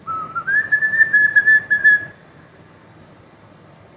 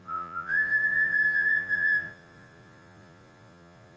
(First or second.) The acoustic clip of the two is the first